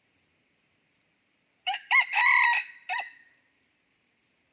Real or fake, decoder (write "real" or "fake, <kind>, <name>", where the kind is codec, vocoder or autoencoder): fake, vocoder, BigVGAN v2